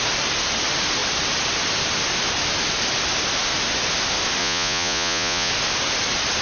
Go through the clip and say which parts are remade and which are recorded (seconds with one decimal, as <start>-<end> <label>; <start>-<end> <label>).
0.0-4.4 recorded; 4.4-5.5 remade; 5.5-6.4 recorded